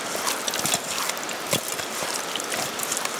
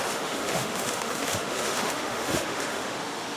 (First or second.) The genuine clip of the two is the first